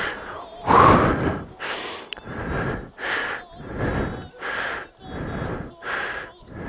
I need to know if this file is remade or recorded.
recorded